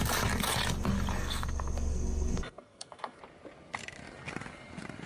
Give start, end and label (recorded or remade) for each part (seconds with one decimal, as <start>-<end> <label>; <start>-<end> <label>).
0.0-1.2 recorded; 1.2-3.2 remade; 3.2-5.1 recorded